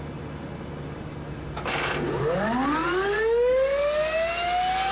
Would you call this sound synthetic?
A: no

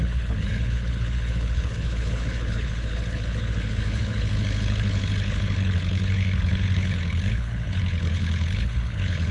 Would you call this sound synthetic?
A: yes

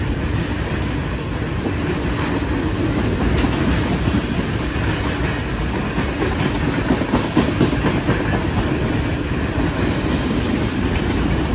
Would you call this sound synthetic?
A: no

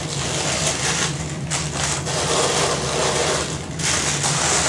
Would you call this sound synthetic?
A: no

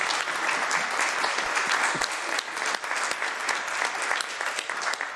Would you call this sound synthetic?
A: no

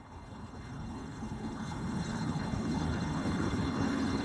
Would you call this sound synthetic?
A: yes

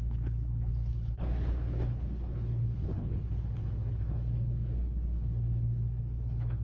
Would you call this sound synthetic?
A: yes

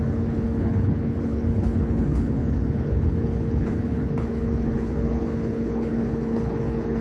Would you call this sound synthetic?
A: yes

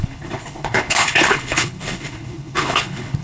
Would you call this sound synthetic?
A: yes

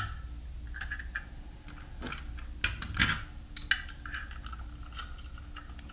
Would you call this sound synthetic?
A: no